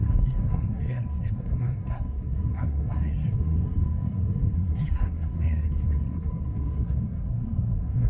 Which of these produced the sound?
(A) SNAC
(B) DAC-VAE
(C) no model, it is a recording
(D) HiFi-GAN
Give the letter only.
A